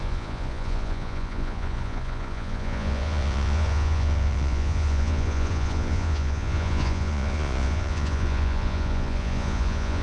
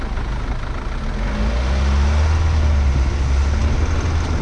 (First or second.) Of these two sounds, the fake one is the first